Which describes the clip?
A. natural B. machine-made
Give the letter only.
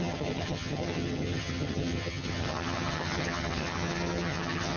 B